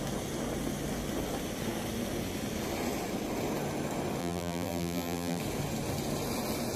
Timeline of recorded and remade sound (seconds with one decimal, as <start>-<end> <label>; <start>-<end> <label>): 0.0-4.2 recorded; 4.2-5.4 remade; 5.4-6.8 recorded